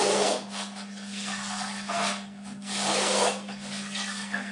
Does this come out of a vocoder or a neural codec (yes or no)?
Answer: yes